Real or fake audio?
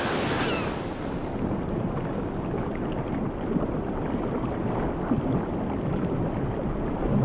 real